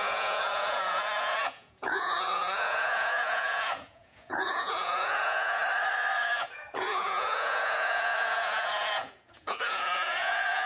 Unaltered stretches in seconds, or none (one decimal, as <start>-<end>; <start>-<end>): 5.6-6.2